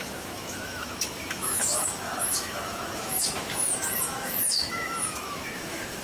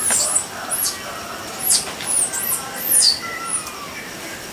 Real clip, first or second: second